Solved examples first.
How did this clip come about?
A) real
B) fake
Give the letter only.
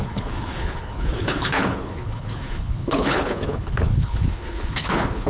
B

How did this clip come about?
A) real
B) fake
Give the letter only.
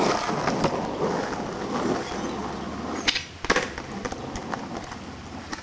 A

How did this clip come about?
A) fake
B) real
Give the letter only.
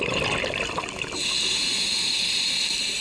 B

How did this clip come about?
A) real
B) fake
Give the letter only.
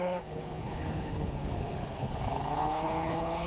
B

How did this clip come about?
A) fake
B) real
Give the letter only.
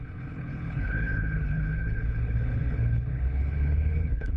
A